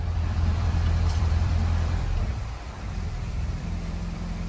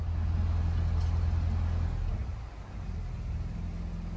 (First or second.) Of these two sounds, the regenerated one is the first